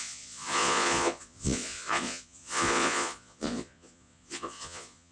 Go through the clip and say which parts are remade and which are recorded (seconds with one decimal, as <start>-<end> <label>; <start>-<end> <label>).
0.0-5.1 remade